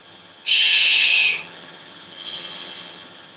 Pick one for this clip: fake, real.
fake